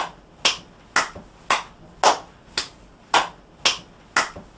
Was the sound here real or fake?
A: real